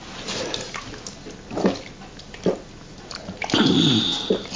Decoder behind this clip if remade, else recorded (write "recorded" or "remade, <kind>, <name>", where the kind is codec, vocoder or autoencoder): recorded